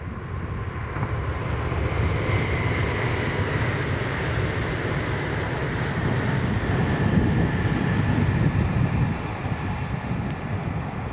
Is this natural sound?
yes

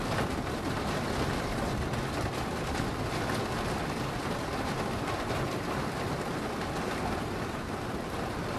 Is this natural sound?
yes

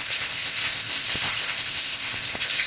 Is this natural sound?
no